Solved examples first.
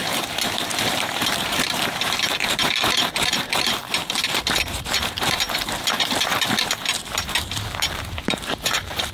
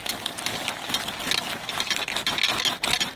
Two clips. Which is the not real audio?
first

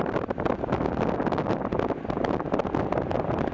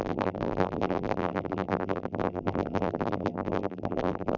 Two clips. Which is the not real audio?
second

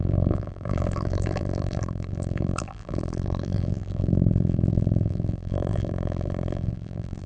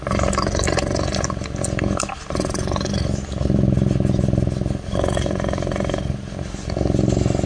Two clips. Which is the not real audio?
first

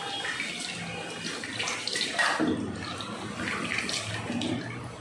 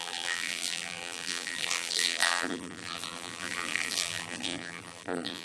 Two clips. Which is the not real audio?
second